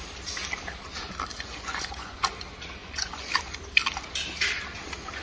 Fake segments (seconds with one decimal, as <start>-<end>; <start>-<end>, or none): 1.3-2.2; 2.8-3.3